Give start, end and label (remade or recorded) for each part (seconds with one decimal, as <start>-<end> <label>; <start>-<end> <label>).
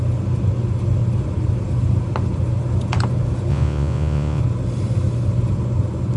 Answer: 0.0-3.5 recorded; 3.5-4.4 remade; 4.4-6.2 recorded